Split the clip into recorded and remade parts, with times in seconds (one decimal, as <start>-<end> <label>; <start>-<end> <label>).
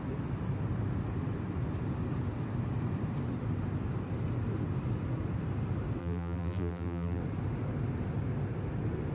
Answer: 0.0-6.0 recorded; 6.0-7.2 remade; 7.2-9.1 recorded